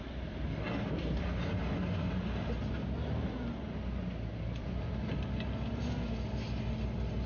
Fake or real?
real